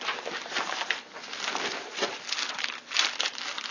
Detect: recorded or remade recorded